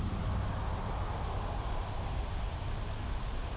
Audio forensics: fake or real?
real